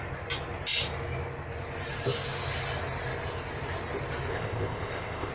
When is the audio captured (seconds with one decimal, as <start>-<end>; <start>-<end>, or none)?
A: 0.0-4.3